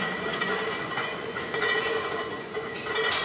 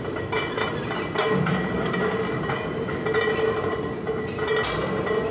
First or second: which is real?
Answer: second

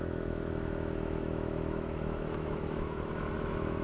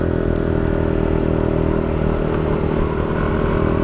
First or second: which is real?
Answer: second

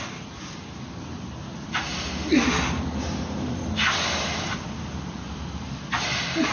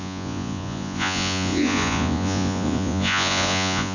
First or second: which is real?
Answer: first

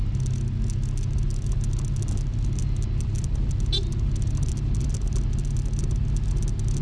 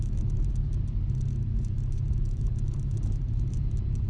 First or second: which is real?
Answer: first